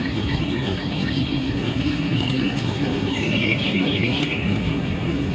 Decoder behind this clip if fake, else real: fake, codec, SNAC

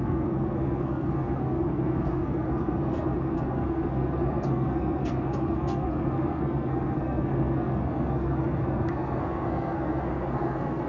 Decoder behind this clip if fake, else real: fake, codec, SNAC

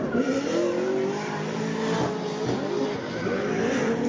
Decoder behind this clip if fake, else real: real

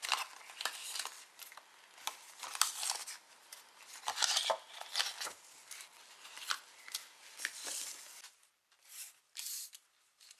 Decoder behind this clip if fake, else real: real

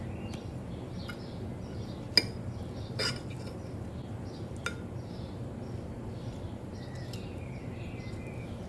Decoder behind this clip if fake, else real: real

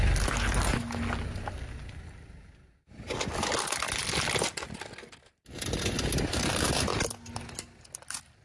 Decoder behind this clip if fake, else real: real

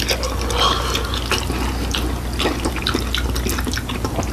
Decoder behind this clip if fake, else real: real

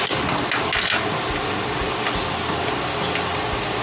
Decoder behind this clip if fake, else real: real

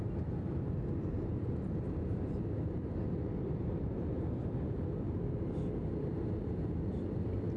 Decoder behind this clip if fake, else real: real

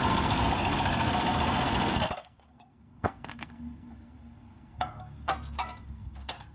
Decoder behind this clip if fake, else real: fake, codec, SNAC